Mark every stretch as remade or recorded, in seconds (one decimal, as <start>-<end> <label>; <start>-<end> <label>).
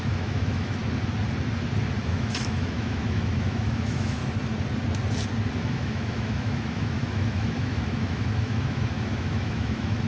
0.0-0.8 remade; 0.8-2.0 recorded; 2.0-4.2 remade; 4.2-5.5 recorded; 5.5-10.1 remade